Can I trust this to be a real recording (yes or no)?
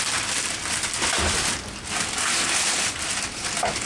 yes